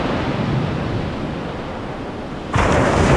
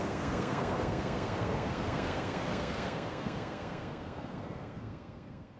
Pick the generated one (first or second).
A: second